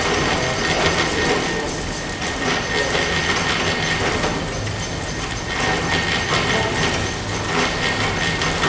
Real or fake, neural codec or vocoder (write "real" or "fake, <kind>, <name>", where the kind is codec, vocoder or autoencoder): real